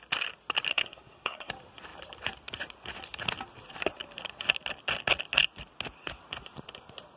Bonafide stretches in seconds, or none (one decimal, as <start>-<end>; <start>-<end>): 0.0-0.7; 1.5-7.2